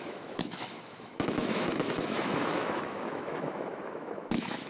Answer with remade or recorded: remade